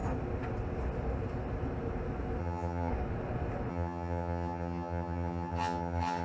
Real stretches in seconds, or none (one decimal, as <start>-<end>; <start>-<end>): 0.0-2.4; 2.9-3.7